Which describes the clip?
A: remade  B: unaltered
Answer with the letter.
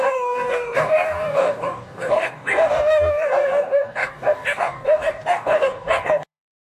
A